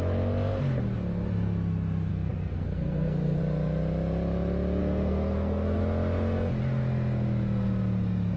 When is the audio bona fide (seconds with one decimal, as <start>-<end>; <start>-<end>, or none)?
0.0-2.1; 3.4-4.8; 5.8-8.4